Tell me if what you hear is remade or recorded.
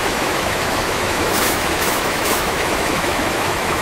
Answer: remade